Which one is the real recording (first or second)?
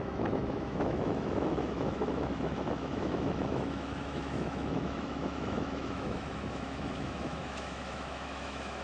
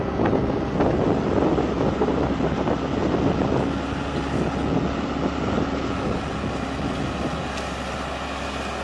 second